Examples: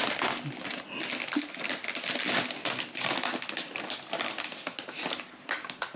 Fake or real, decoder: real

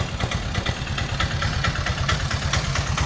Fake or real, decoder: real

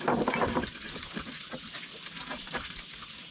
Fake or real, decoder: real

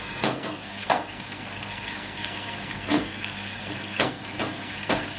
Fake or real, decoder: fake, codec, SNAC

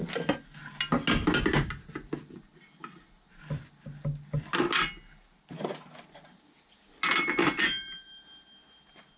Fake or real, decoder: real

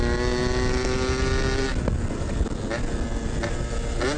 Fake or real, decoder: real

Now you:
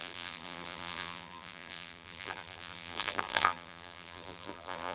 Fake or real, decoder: fake, vocoder, BigVGAN v2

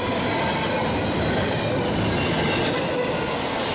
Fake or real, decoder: real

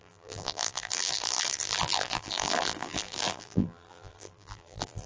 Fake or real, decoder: fake, vocoder, BigVGAN v2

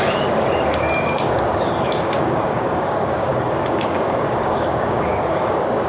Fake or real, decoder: fake, codec, DAC